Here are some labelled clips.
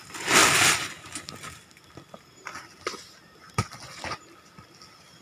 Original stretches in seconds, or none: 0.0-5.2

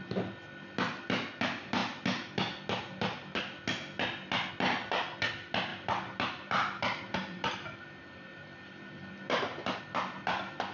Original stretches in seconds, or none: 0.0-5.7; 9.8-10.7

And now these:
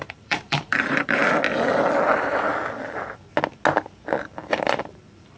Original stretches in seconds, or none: 1.2-2.1; 2.5-4.2

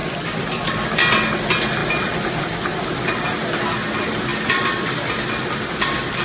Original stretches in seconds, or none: 0.0-6.2

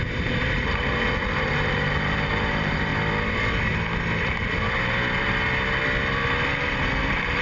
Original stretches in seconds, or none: 2.9-7.0